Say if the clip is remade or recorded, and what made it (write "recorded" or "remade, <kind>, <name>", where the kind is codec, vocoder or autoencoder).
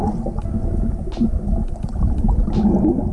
recorded